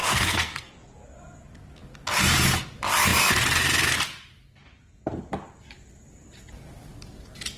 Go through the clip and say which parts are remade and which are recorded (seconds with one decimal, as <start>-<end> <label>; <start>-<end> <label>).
0.0-0.7 remade; 0.7-7.6 recorded